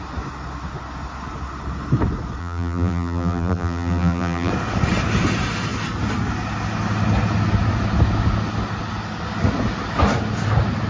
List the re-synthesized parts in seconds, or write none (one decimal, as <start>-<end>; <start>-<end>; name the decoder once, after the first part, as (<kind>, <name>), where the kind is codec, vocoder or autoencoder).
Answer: 2.4-4.5 (vocoder, BigVGAN v2)